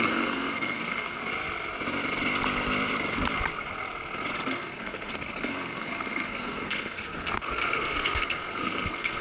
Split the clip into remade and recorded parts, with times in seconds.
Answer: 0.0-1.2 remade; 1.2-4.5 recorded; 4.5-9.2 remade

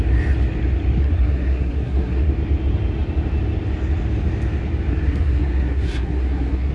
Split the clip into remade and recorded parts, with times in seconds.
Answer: 0.0-1.0 recorded; 1.0-2.3 remade; 2.3-4.9 recorded; 4.9-6.7 remade

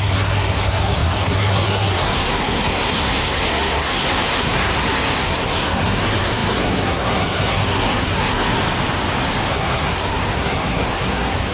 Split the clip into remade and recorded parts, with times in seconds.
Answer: 0.0-8.6 remade; 8.6-9.5 recorded; 9.5-11.5 remade

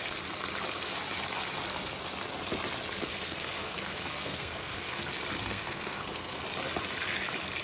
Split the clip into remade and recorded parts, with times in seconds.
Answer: 0.0-3.1 recorded; 3.1-5.0 remade; 5.0-5.4 recorded; 5.4-6.4 remade; 6.4-7.6 recorded

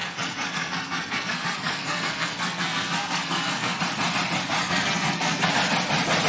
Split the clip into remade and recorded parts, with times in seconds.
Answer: 0.0-3.8 remade; 3.8-4.6 recorded; 4.6-5.5 remade; 5.5-6.3 recorded